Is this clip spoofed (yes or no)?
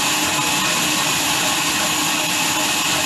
no